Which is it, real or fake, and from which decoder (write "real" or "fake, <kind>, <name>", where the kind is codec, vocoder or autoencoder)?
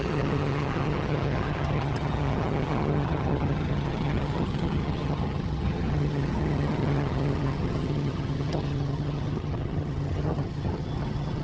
fake, vocoder, HiFi-GAN